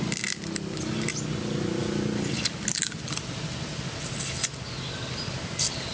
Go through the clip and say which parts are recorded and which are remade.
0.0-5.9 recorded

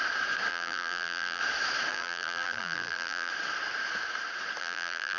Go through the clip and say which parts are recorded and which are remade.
0.0-0.5 recorded; 0.5-1.4 remade; 1.4-1.9 recorded; 1.9-3.3 remade; 3.3-4.6 recorded; 4.6-5.2 remade

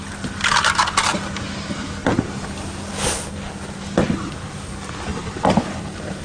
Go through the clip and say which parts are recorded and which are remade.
0.0-5.1 recorded; 5.1-6.2 remade

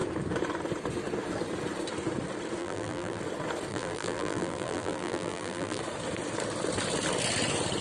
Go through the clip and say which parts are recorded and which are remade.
0.0-2.6 recorded; 2.6-3.2 remade; 3.2-3.7 recorded; 3.7-5.8 remade; 5.8-7.8 recorded

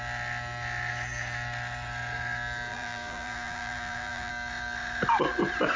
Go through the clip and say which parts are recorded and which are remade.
0.0-2.7 recorded; 2.7-4.3 remade; 4.3-5.8 recorded